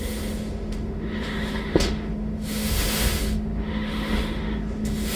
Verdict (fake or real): fake